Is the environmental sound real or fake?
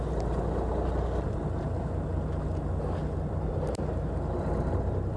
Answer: real